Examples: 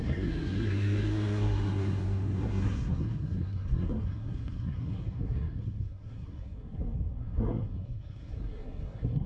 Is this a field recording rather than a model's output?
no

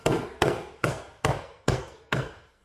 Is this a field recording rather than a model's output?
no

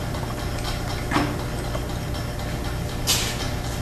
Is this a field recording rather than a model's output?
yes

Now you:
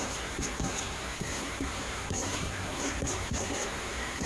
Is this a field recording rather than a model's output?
no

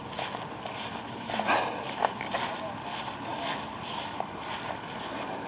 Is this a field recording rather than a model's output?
yes